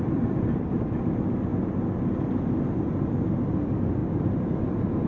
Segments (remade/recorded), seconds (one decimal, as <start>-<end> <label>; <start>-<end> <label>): 0.0-1.5 remade; 1.5-3.5 recorded; 3.5-4.0 remade; 4.0-4.6 recorded; 4.6-5.1 remade